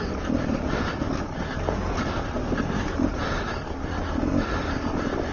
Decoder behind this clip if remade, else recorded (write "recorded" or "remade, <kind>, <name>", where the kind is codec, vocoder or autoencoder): remade, vocoder, BigVGAN v2